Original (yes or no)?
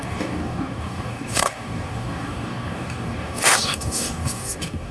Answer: no